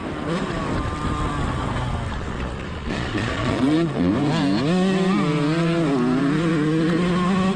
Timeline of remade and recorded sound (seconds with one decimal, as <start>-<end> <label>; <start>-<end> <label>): 0.0-2.1 recorded; 2.1-4.1 remade; 4.1-7.6 recorded